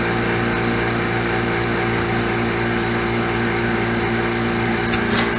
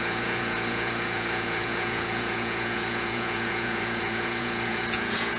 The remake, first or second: second